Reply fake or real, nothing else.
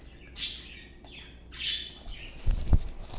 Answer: real